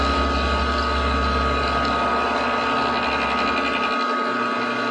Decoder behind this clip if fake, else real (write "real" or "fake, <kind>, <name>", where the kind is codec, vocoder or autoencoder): real